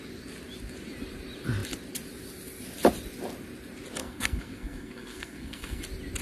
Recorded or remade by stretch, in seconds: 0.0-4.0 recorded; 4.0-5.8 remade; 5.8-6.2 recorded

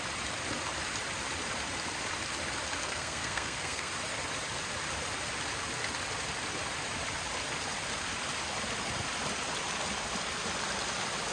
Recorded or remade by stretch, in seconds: 0.0-2.8 recorded; 2.8-3.9 remade; 3.9-11.3 recorded

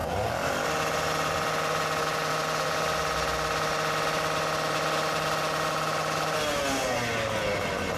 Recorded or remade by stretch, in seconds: 0.0-8.0 recorded

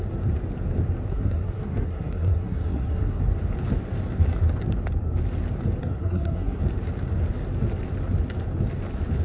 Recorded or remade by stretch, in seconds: 0.0-1.1 recorded; 1.1-3.2 remade; 3.2-5.8 recorded; 5.8-6.6 remade; 6.6-9.2 recorded

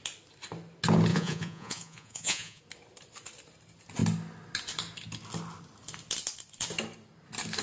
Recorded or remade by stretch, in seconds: 0.0-1.1 recorded; 1.1-2.6 remade; 2.6-7.6 recorded

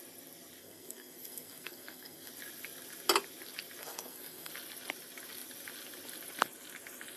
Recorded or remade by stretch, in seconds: 0.0-0.6 recorded; 0.6-2.3 remade; 2.3-3.8 recorded; 3.8-4.5 remade; 4.5-7.2 recorded

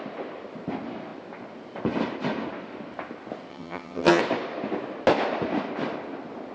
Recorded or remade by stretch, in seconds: 0.0-3.5 recorded; 3.5-4.2 remade; 4.2-6.5 recorded

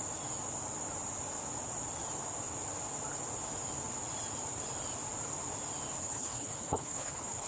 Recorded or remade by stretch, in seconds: 0.0-6.0 recorded; 6.0-7.5 remade